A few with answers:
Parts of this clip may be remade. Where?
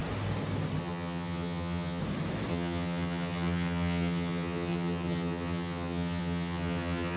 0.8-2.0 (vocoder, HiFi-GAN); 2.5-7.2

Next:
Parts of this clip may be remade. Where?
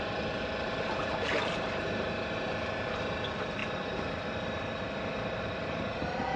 none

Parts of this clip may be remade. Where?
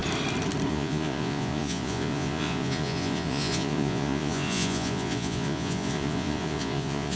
0.7-7.2 (vocoder, Vocos)